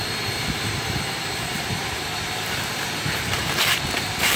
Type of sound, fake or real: fake